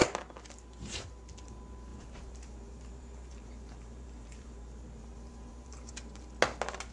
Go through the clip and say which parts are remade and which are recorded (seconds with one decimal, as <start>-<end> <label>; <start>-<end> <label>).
0.0-1.9 recorded; 1.9-5.9 remade; 5.9-6.9 recorded